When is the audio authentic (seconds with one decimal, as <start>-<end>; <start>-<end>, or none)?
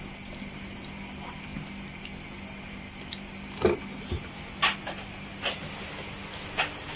0.0-1.5; 4.0-7.0